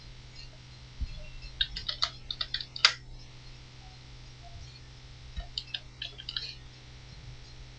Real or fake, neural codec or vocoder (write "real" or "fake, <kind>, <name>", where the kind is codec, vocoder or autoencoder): real